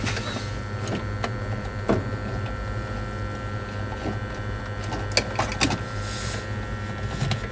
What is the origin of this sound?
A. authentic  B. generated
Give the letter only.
A